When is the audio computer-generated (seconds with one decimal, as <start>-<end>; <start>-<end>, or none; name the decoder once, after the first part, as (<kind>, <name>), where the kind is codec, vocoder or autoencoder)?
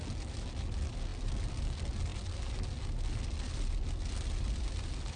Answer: none